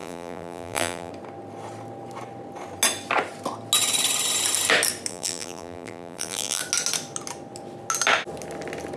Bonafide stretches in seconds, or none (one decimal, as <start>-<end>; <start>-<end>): 1.1-5.1; 6.6-9.0